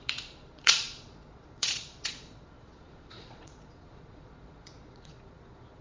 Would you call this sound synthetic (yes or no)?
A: yes